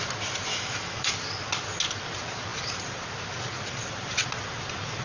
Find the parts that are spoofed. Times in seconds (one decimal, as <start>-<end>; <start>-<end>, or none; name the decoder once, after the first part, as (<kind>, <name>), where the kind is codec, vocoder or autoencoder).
0.5-1.1 (autoencoder, DAC-VAE)

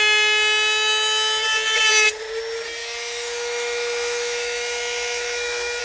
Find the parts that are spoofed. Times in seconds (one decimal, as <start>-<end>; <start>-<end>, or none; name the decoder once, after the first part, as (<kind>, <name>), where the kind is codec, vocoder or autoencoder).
2.8-5.8 (autoencoder, DAC-VAE)

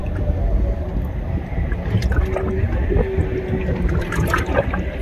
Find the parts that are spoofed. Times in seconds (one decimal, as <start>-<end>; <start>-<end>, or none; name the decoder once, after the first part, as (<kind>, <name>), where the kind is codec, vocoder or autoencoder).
none

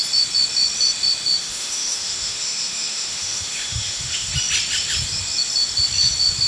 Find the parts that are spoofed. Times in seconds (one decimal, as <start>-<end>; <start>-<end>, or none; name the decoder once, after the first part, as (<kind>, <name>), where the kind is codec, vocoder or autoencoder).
1.4-4.3 (autoencoder, DAC-VAE)

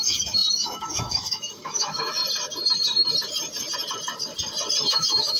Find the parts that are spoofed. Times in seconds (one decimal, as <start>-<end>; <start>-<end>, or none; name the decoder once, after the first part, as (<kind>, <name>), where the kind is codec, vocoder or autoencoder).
0.0-2.2 (autoencoder, DAC-VAE); 4.9-5.4